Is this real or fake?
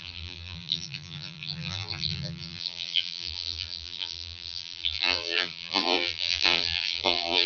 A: fake